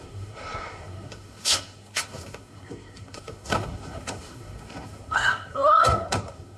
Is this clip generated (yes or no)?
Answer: yes